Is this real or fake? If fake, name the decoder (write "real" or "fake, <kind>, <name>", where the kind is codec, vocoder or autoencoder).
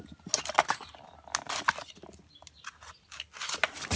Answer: real